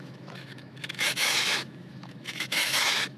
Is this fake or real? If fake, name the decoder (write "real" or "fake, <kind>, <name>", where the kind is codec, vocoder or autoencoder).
fake, autoencoder, DAC-VAE